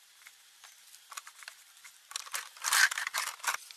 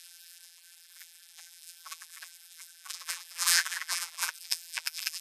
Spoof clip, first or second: second